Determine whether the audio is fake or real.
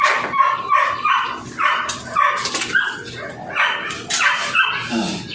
real